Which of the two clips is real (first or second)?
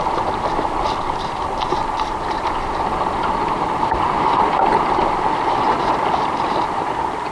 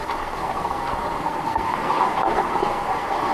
first